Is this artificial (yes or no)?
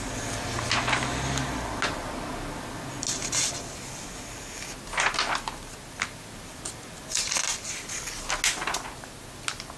no